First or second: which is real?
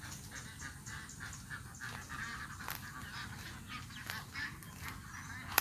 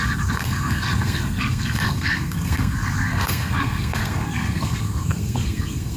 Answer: first